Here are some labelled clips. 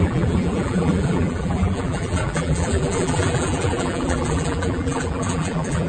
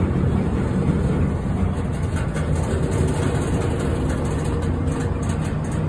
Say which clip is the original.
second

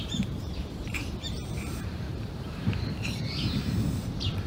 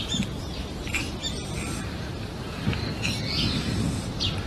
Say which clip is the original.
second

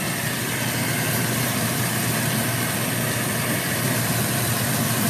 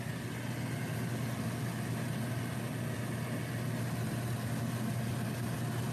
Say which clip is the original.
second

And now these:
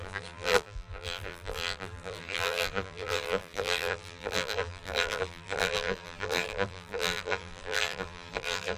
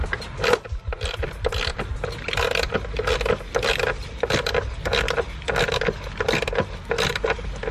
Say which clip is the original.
second